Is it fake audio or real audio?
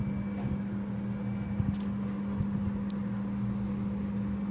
real